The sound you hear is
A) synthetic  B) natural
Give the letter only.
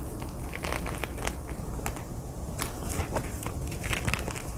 B